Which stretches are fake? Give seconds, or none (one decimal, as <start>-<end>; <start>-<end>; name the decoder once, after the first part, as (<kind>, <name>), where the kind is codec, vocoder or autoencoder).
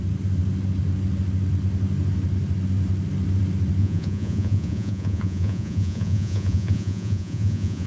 3.8-7.9 (vocoder, Vocos)